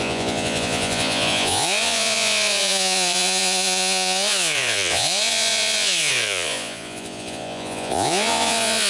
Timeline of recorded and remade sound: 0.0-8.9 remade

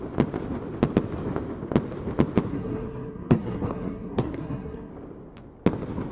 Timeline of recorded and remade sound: 0.0-2.5 recorded; 2.5-4.9 remade; 4.9-6.1 recorded

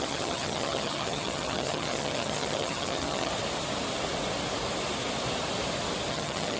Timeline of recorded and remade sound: 0.0-3.3 remade; 3.3-6.1 recorded; 6.1-6.6 remade

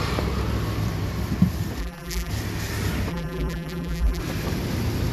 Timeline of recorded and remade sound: 0.0-1.8 recorded; 1.8-2.3 remade; 2.3-3.1 recorded; 3.1-4.2 remade; 4.2-5.1 recorded

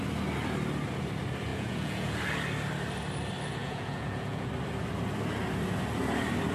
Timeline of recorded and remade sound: 0.0-1.5 recorded; 1.5-2.2 remade; 2.2-3.6 recorded; 3.6-4.5 remade; 4.5-6.5 recorded

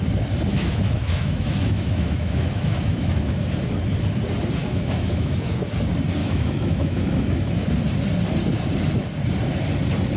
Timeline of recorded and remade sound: 0.0-0.5 recorded; 0.5-3.4 remade; 3.4-4.6 recorded; 4.6-5.6 remade; 5.6-6.2 recorded; 6.2-7.6 remade; 7.6-10.2 recorded

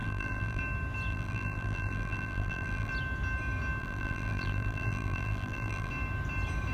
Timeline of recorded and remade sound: 0.0-0.6 remade; 0.6-1.1 recorded; 1.1-2.9 remade; 2.9-3.8 recorded; 3.8-5.9 remade; 5.9-6.7 recorded

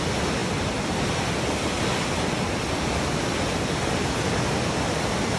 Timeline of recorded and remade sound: 0.0-5.4 recorded